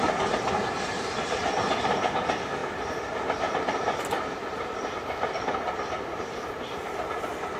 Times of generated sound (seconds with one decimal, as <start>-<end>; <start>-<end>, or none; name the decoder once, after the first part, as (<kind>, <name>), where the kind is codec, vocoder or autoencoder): 0.0-7.6 (vocoder, BigVGAN v2)